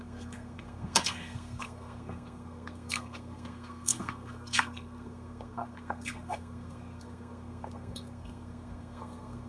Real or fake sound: fake